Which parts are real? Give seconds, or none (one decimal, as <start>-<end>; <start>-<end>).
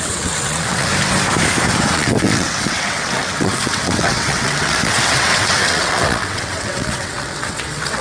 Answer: 0.9-1.9